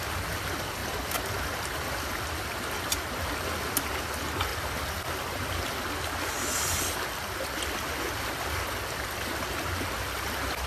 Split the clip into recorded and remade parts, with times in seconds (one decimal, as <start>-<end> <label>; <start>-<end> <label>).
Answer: 0.0-10.7 recorded